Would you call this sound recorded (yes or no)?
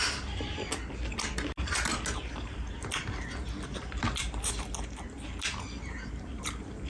yes